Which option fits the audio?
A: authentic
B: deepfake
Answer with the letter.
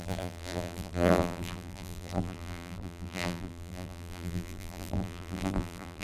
B